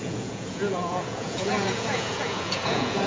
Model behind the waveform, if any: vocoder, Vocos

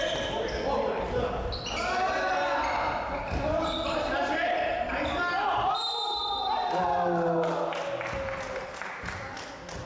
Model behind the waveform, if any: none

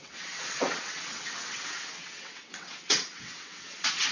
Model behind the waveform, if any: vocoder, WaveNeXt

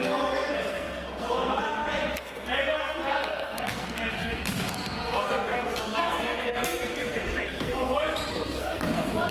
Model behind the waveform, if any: codec, SNAC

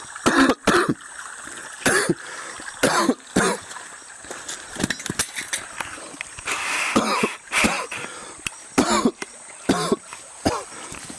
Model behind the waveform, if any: none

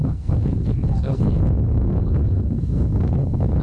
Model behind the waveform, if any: codec, SNAC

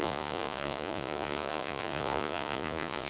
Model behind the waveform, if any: vocoder, Vocos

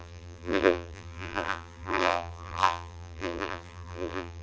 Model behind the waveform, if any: vocoder, BigVGAN v2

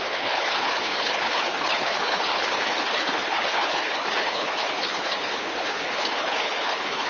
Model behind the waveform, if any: codec, HILCodec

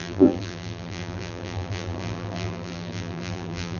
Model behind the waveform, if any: vocoder, BigVGAN v2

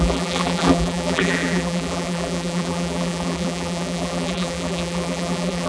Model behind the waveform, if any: vocoder, BigVGAN v2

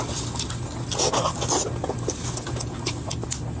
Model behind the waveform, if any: none